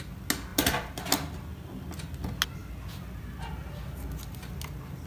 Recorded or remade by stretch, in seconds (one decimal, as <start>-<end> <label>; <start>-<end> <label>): 0.0-5.1 recorded